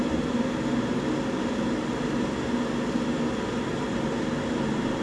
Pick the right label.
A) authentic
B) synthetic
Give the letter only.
A